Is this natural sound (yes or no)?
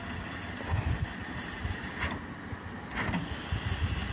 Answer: yes